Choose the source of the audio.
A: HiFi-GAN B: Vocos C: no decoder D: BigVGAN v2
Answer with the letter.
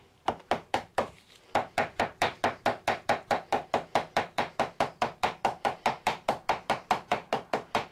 D